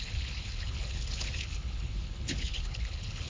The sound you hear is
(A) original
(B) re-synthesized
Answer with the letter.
B